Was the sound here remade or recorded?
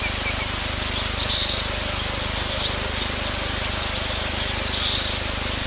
recorded